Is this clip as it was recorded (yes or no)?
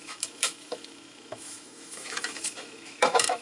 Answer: no